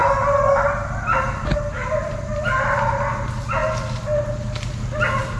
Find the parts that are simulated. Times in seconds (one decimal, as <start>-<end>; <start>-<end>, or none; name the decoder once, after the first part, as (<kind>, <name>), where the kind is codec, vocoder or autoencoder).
none